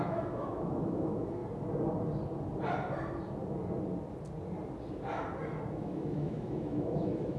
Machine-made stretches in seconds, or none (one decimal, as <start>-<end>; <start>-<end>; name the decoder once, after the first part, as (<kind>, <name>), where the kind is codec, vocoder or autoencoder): 0.0-1.4 (autoencoder, DAC-VAE); 5.7-7.4